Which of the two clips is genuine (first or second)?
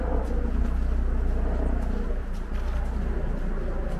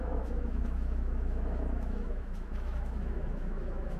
first